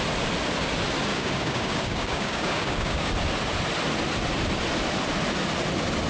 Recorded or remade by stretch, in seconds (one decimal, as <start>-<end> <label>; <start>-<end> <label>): 0.0-1.1 recorded; 1.1-3.1 remade; 3.1-6.1 recorded